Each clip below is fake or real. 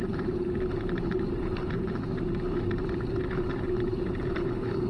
fake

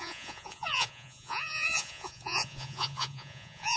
fake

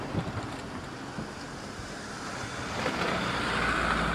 fake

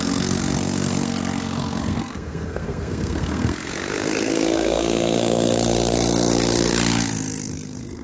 fake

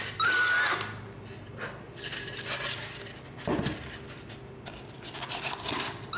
real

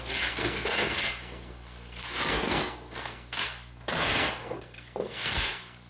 fake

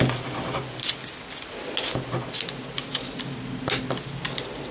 real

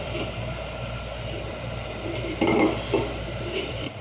fake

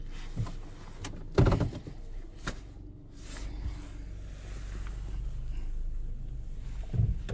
real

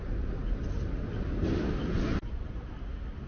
real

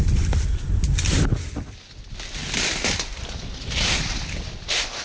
real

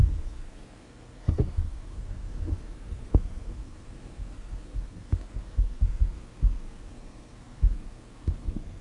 fake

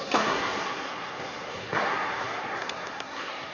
fake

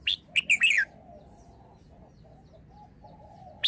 real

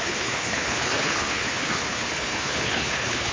fake